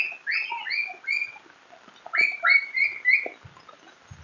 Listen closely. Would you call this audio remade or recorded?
recorded